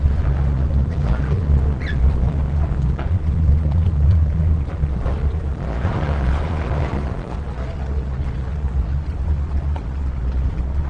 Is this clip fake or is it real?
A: fake